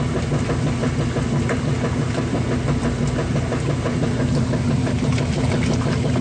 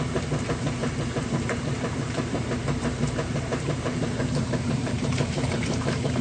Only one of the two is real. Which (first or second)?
first